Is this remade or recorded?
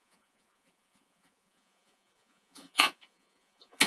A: remade